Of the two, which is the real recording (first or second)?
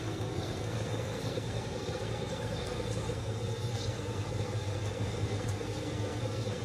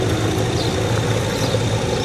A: second